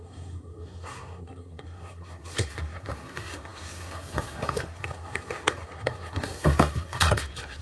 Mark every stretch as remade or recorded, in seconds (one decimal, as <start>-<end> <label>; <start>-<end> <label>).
0.0-7.6 remade